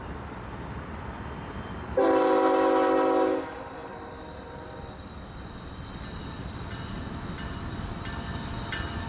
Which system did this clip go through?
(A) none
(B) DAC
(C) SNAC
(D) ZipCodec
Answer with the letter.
A